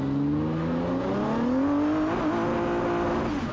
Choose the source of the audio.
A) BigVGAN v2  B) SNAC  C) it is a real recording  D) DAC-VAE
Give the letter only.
C